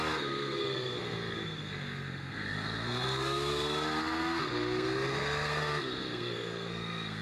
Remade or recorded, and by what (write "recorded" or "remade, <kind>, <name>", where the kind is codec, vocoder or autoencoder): remade, codec, SNAC